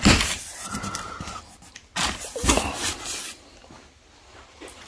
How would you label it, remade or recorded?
recorded